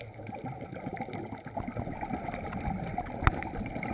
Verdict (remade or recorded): recorded